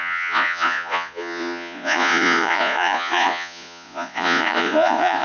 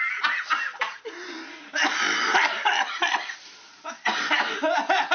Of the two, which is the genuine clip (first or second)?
second